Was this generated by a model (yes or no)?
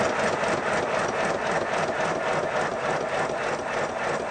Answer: no